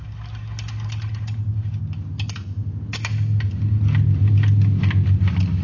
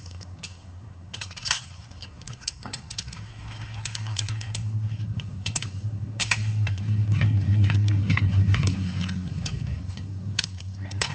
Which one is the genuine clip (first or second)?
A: first